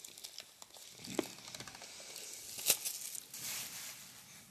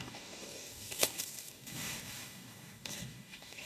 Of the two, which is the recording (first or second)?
first